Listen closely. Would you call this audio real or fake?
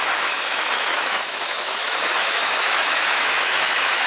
fake